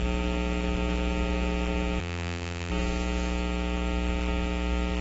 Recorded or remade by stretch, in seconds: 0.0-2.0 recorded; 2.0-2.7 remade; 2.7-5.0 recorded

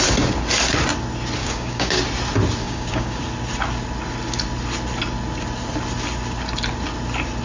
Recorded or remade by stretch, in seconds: 0.0-1.4 recorded; 1.4-2.0 remade; 2.0-2.6 recorded; 2.6-3.2 remade; 3.2-7.4 recorded

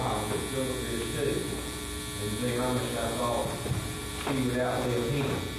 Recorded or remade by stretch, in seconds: 0.0-1.4 recorded; 1.4-2.0 remade; 2.0-3.4 recorded; 3.4-4.1 remade; 4.1-5.6 recorded

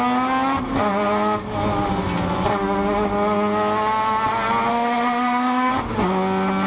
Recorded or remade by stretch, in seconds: 0.0-4.7 recorded; 4.7-5.7 remade; 5.7-6.7 recorded

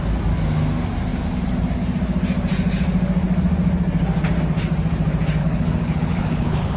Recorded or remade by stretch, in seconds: 0.0-5.4 recorded; 5.4-6.8 remade

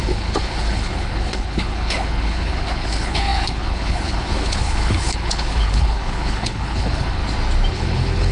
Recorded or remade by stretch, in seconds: 0.0-7.2 remade; 7.2-7.7 recorded; 7.7-8.3 remade

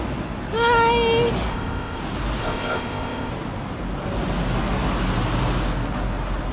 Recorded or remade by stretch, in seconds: 0.0-1.5 recorded; 1.5-2.0 remade; 2.0-2.4 recorded; 2.4-3.3 remade; 3.3-6.5 recorded